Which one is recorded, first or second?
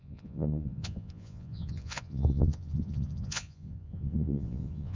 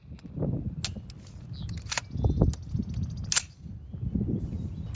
second